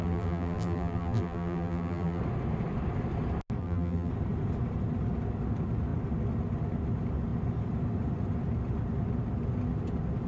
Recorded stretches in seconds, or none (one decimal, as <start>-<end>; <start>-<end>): 2.2-3.6; 4.1-10.3